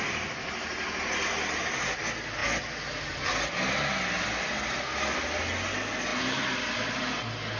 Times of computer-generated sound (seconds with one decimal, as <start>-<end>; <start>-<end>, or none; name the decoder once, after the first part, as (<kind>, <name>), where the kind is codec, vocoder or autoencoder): none